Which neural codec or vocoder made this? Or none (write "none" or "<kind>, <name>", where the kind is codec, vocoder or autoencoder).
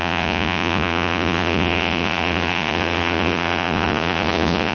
vocoder, Vocos